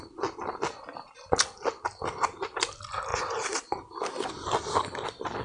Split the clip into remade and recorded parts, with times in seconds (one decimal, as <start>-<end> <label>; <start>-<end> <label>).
0.0-5.4 recorded